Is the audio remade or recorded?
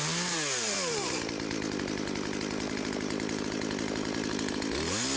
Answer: recorded